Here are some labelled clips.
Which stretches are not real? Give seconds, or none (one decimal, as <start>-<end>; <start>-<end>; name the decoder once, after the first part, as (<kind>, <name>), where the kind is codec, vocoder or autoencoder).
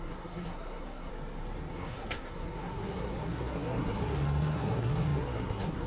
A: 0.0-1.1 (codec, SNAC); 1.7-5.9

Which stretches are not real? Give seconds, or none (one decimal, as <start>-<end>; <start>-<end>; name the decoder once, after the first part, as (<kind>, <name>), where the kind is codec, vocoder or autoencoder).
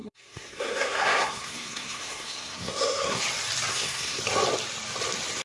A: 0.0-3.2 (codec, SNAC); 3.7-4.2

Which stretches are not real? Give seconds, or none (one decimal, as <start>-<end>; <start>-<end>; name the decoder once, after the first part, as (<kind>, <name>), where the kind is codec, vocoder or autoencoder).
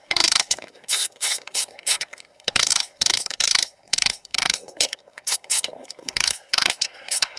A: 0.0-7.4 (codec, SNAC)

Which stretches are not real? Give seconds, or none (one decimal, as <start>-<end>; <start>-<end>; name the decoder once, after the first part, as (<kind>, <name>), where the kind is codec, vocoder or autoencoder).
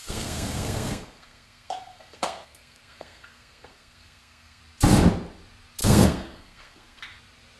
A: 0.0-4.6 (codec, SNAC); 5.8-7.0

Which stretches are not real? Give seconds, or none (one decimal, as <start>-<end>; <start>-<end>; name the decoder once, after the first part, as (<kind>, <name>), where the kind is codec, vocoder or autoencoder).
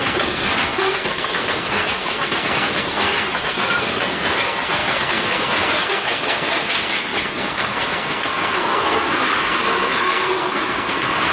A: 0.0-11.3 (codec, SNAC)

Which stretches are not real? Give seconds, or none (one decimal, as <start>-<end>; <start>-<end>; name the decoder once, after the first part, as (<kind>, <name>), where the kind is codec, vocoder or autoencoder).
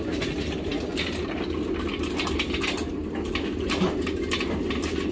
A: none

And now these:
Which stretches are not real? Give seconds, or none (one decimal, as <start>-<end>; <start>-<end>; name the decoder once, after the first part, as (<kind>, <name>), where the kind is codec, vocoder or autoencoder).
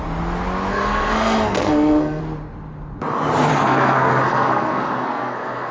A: 0.7-2.2 (codec, SNAC); 3.5-5.7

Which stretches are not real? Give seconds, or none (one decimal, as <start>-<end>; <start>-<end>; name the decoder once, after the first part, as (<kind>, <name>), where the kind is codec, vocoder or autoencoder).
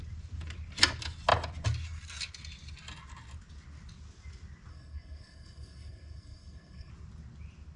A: 4.7-6.9 (codec, SNAC)